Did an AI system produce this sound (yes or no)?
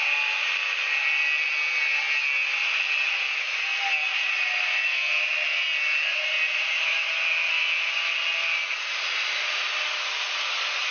no